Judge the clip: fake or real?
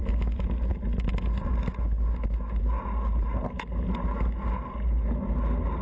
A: real